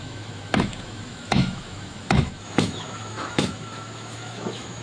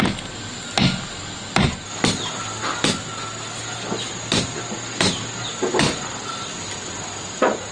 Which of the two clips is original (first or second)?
second